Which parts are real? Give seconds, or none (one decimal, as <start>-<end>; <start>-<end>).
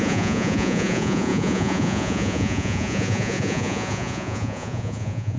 none